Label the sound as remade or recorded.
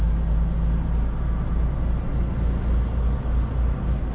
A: recorded